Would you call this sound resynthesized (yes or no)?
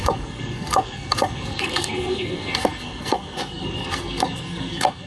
yes